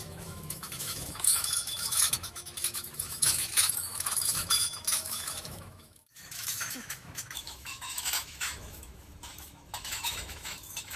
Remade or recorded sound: remade